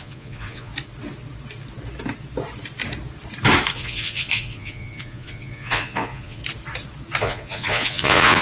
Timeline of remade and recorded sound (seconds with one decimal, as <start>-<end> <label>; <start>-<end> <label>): 0.0-0.7 remade; 0.7-3.7 recorded; 3.7-6.4 remade; 6.4-7.2 recorded; 7.2-8.4 remade